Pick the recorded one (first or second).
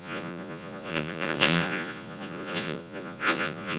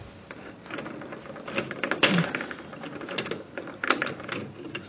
second